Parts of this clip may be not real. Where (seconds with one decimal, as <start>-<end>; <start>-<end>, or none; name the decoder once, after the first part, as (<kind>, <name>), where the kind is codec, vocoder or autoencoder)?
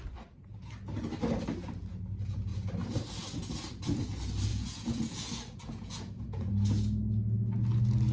4.5-6.5 (vocoder, Vocos)